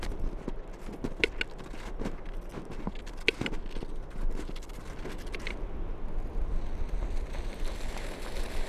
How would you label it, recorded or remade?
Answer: recorded